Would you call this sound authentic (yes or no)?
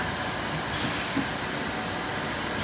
yes